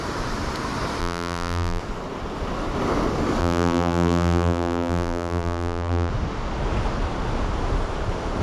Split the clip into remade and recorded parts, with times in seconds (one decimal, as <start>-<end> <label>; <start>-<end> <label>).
0.0-1.0 recorded; 1.0-1.8 remade; 1.8-3.4 recorded; 3.4-6.1 remade; 6.1-8.4 recorded